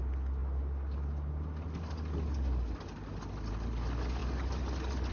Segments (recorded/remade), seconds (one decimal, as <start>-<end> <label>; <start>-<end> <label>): 0.0-5.1 recorded